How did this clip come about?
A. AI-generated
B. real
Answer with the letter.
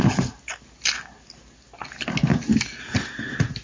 B